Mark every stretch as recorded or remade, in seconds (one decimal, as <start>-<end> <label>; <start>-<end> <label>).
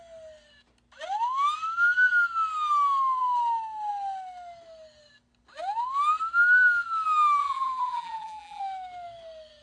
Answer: 0.0-7.4 recorded; 7.4-8.6 remade; 8.6-9.6 recorded